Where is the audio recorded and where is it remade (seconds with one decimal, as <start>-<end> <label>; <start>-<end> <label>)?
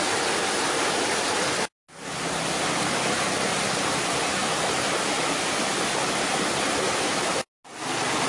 0.0-8.3 recorded